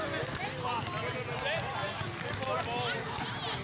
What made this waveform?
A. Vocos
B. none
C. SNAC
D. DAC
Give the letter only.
B